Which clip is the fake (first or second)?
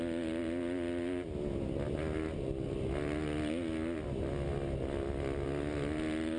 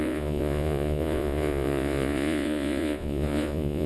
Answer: second